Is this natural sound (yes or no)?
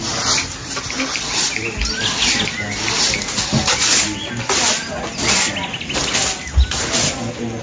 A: yes